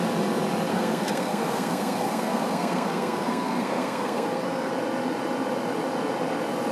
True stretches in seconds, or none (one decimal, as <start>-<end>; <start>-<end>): 0.0-0.7; 4.7-6.7